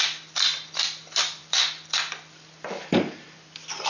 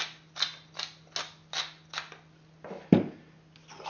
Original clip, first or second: second